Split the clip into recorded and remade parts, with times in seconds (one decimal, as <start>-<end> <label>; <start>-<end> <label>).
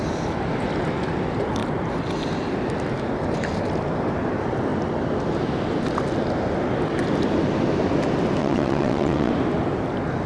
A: 0.0-8.4 recorded; 8.4-9.3 remade; 9.3-10.3 recorded